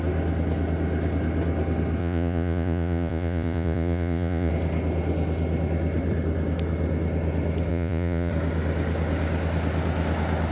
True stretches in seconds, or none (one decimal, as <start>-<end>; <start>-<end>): 0.0-2.0; 4.5-7.7; 8.3-10.5